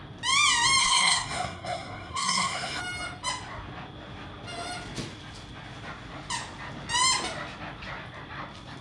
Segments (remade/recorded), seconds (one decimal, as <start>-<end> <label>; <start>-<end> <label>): 0.0-0.8 recorded; 0.8-2.8 remade; 2.8-8.8 recorded